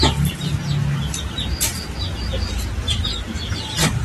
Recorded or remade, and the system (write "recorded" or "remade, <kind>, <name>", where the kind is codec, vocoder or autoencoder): recorded